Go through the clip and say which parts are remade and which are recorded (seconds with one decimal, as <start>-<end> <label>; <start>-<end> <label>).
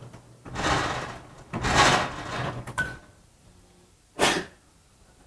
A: 0.0-2.3 recorded; 2.3-3.0 remade; 3.0-5.3 recorded